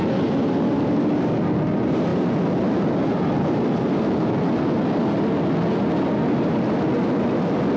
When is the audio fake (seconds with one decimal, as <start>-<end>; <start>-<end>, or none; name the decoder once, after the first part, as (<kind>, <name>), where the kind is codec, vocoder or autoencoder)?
none